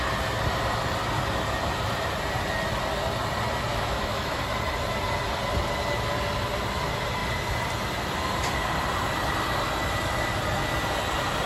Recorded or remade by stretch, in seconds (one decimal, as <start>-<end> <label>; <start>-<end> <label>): 0.0-3.7 recorded; 3.7-4.4 remade; 4.4-11.5 recorded